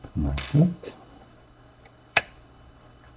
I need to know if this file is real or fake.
fake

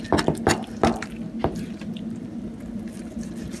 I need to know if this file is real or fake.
real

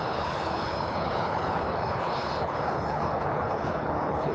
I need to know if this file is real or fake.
fake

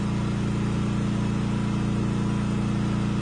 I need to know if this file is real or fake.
real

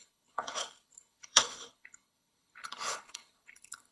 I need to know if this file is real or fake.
fake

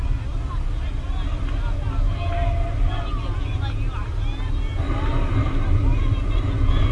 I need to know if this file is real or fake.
real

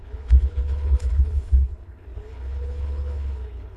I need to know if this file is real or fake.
fake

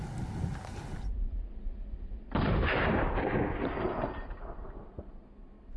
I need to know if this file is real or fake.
real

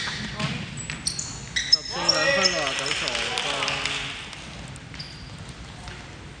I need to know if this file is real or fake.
real